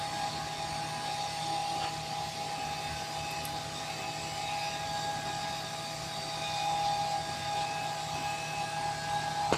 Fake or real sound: real